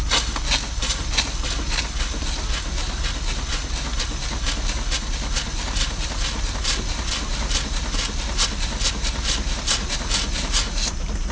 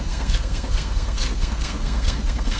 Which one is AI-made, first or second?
second